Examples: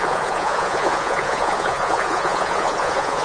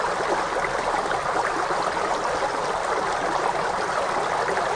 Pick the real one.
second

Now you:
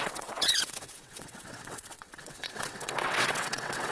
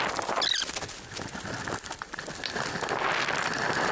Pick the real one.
second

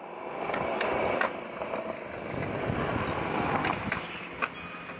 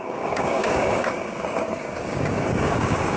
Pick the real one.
first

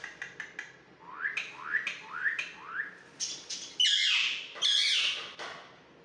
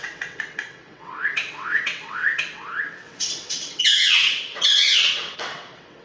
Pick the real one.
first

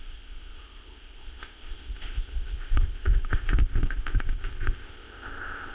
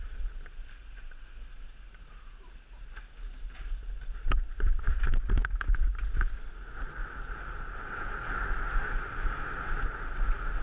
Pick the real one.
second